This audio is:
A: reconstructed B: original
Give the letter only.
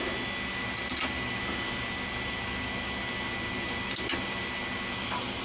B